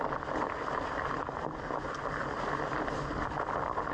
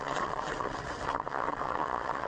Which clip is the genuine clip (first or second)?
first